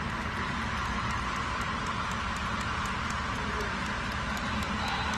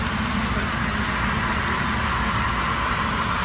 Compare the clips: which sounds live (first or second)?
second